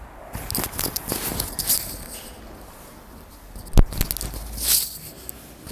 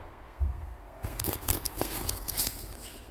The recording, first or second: first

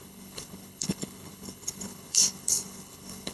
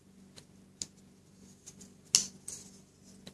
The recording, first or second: second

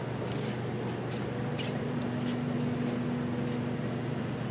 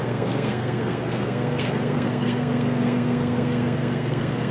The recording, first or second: first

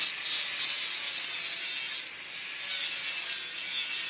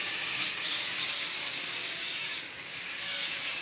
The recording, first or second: first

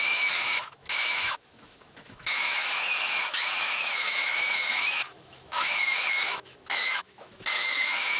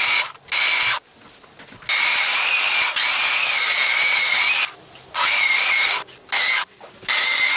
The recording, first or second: second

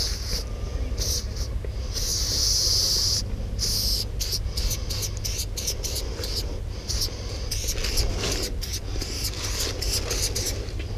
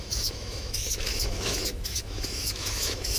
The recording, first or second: first